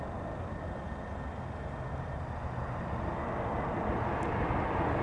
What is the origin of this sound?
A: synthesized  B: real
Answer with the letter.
B